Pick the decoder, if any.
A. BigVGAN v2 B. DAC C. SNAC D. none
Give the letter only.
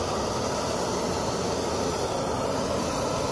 D